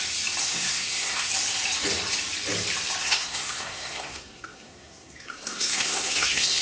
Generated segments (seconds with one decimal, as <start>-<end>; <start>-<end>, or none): 0.4-1.3; 3.0-6.6